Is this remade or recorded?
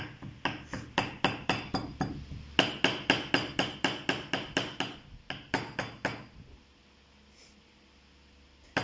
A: recorded